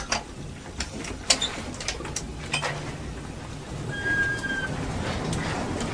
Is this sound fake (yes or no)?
no